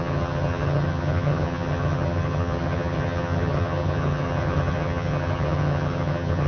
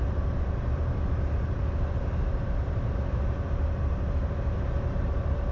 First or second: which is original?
second